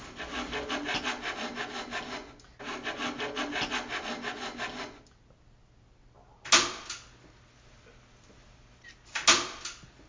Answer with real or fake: real